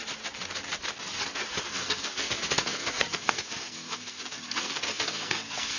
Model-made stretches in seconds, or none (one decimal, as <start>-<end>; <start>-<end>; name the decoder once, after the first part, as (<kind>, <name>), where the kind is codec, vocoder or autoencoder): 1.6-5.8 (codec, SNAC)